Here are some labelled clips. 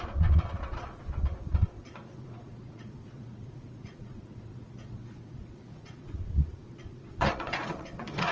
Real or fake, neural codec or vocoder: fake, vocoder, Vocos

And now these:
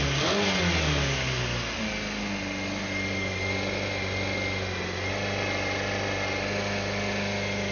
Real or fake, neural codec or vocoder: real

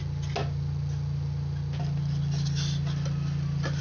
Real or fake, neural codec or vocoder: real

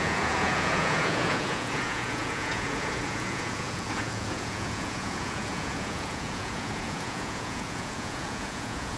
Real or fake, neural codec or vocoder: fake, vocoder, Vocos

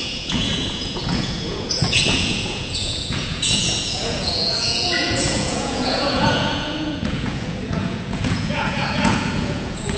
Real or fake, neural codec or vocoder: fake, vocoder, Vocos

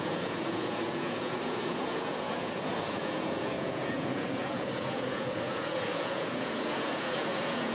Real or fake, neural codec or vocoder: fake, vocoder, Vocos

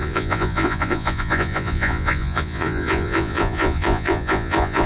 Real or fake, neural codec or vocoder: fake, vocoder, Vocos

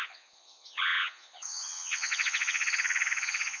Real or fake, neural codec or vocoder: fake, vocoder, Vocos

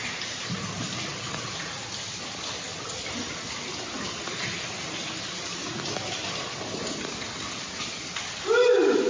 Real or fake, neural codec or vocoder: real